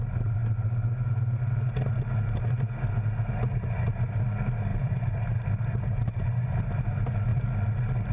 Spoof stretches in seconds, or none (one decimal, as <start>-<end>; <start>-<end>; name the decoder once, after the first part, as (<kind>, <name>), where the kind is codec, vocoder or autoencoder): 4.7-6.2 (vocoder, BigVGAN v2); 7.3-8.1